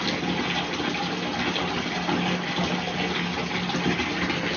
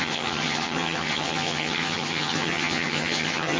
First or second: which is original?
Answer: first